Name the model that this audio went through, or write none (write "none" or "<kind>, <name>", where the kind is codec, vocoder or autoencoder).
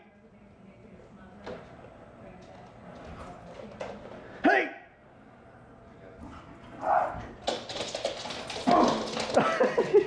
none